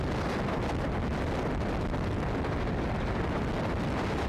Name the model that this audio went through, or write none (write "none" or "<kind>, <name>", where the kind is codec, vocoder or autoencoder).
none